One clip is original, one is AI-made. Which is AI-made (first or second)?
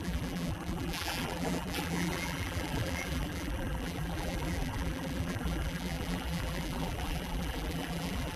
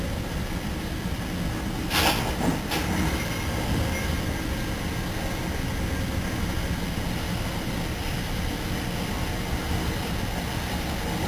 first